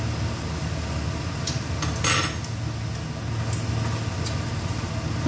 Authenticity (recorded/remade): recorded